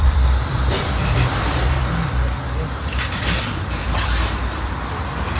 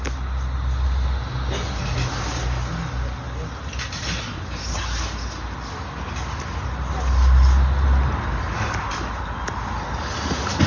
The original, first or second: second